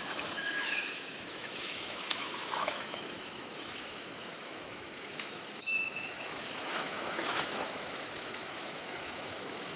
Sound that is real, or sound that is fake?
fake